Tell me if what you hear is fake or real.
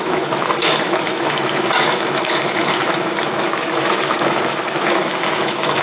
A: fake